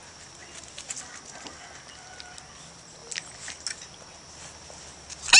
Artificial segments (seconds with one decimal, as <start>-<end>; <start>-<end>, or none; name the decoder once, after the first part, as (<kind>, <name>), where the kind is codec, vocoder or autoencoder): none